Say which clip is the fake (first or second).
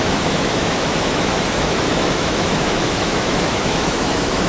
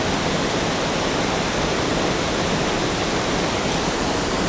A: first